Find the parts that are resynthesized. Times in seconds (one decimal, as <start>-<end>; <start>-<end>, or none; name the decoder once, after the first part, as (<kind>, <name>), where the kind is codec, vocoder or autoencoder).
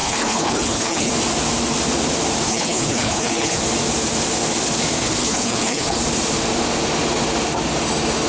0.0-1.1 (codec, HILCodec); 2.5-3.6; 5.2-6.0